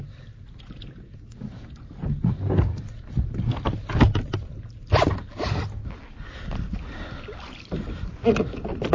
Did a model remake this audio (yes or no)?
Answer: no